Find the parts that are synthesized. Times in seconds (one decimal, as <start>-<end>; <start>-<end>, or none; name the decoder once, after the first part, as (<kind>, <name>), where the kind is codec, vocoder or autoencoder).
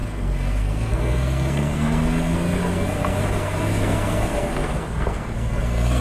0.0-6.0 (codec, SNAC)